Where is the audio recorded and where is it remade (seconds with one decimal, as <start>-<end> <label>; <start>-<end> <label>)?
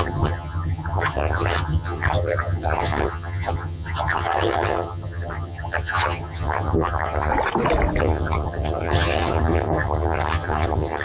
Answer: 0.0-7.3 remade; 7.3-8.0 recorded; 8.0-11.0 remade